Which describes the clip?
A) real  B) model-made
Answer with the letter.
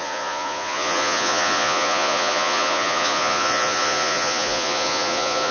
B